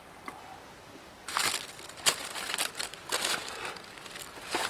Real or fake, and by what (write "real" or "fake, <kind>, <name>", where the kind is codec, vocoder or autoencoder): real